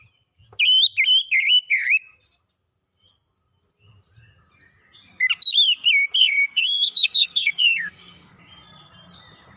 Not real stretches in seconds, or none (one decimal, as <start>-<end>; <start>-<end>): 6.2-8.4